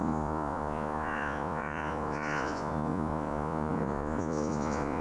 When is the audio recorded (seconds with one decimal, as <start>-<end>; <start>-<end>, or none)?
none